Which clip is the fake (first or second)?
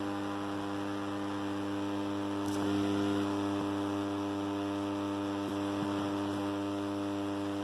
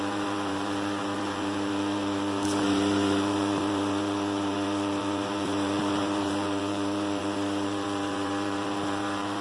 second